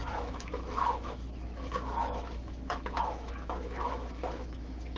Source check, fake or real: fake